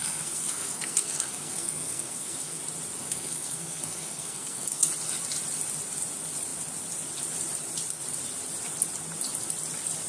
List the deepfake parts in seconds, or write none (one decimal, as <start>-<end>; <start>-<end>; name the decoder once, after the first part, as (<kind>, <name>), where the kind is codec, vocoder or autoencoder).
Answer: 0.0-2.6 (codec, SNAC); 3.0-4.9